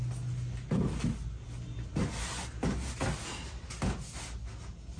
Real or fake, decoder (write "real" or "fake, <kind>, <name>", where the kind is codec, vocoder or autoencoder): real